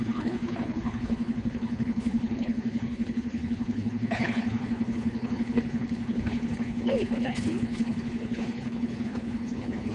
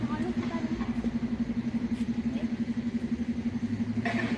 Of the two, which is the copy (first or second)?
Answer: first